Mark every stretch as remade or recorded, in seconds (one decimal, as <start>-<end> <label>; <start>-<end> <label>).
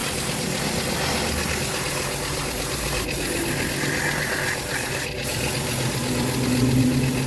0.0-7.3 recorded